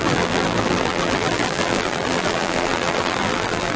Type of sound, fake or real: fake